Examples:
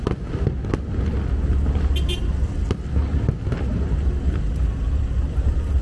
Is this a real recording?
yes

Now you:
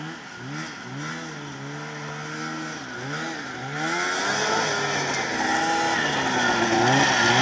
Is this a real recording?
yes